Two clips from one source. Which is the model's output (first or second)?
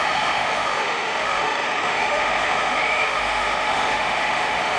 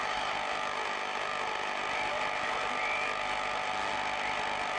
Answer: first